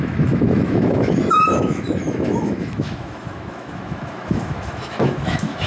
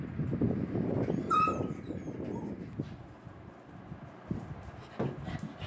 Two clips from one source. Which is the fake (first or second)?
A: first